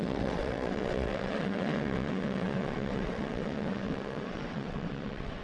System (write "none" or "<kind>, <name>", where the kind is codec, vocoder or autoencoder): vocoder, WaveNeXt